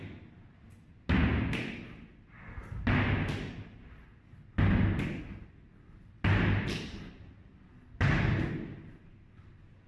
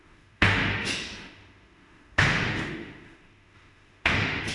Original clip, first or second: first